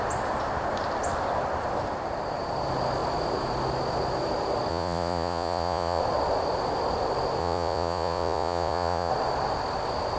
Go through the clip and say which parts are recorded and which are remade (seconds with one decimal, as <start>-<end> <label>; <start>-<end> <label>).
0.0-4.7 recorded; 4.7-6.0 remade; 6.0-7.4 recorded; 7.4-9.1 remade; 9.1-10.2 recorded